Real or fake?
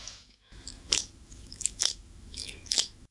fake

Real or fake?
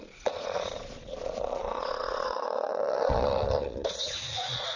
fake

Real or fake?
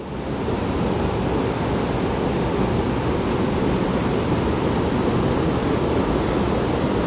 real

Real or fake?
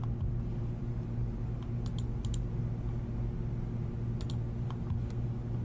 real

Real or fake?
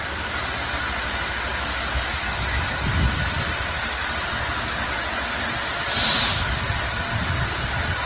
real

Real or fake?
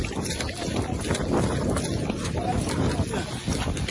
real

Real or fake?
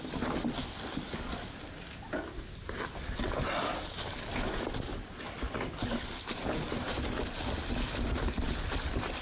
real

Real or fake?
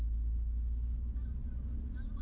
real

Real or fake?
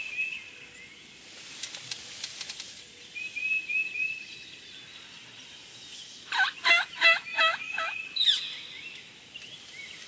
real